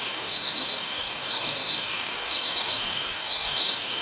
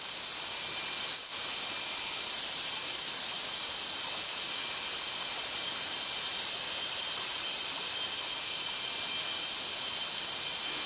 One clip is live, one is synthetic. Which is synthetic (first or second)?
first